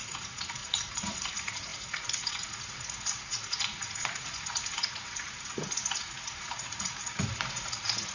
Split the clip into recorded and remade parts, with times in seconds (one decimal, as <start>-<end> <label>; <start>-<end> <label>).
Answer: 0.0-8.1 remade